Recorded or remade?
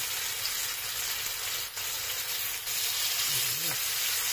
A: recorded